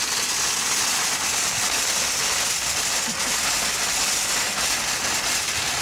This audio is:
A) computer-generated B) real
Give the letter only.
B